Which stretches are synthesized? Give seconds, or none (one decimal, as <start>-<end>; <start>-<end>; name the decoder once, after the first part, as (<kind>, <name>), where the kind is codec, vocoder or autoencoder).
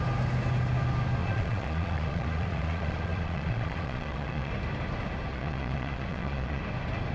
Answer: 1.2-4.5 (vocoder, Vocos); 5.3-6.6